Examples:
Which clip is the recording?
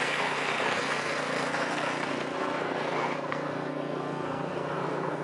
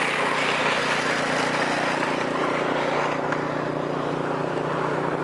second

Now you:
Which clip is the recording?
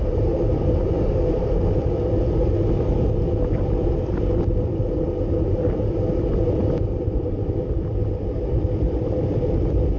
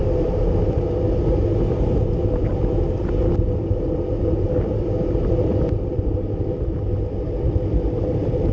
second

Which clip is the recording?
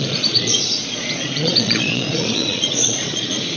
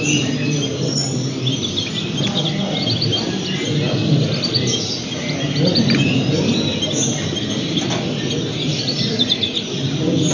second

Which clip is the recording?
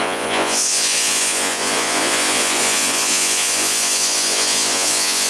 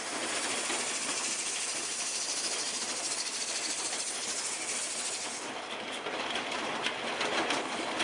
second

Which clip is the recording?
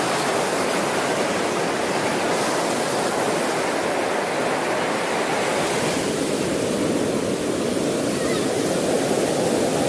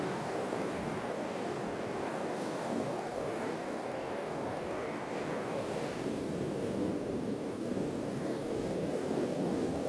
first